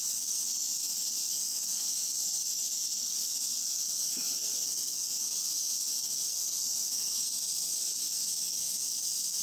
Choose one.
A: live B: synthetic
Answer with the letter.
B